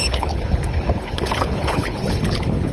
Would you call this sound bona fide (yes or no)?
no